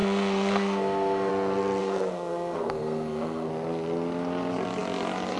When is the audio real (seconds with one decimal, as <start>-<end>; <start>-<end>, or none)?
1.3-1.8; 3.5-5.4